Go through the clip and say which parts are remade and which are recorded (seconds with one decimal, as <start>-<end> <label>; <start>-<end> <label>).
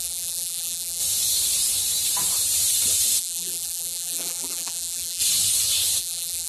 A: 0.0-1.0 remade; 1.0-3.2 recorded; 3.2-5.2 remade; 5.2-6.0 recorded; 6.0-6.5 remade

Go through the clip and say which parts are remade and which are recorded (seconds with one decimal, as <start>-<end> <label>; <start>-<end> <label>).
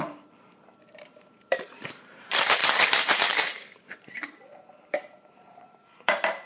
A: 0.0-6.5 remade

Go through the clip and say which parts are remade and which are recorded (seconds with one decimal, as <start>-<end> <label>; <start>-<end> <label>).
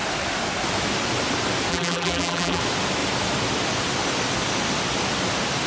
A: 0.0-1.7 recorded; 1.7-2.6 remade; 2.6-5.7 recorded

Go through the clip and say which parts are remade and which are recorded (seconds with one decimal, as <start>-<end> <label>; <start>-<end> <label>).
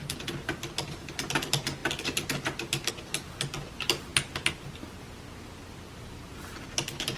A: 0.0-1.8 remade; 1.8-2.9 recorded; 2.9-7.2 remade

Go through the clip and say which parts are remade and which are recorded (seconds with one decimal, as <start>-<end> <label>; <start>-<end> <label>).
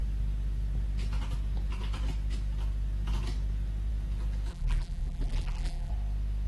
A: 0.0-4.5 recorded; 4.5-5.9 remade; 5.9-6.5 recorded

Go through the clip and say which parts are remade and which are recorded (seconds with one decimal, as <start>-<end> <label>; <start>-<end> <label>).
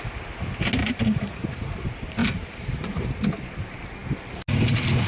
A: 0.0-0.8 recorded; 0.8-1.5 remade; 1.5-2.2 recorded; 2.2-3.1 remade; 3.1-5.1 recorded